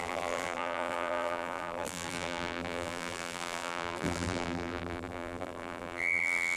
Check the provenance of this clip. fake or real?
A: fake